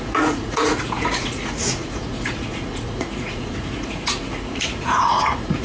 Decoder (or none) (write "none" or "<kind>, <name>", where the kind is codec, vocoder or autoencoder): vocoder, Vocos